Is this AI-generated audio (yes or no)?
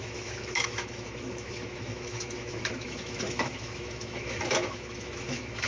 yes